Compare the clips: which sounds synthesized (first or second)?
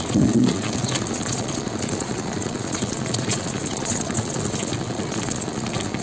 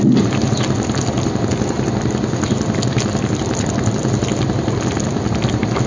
first